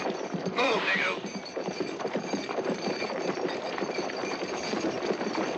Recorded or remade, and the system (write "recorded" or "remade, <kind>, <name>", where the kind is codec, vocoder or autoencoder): remade, vocoder, BigVGAN v2